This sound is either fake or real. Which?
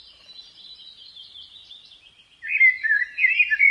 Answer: real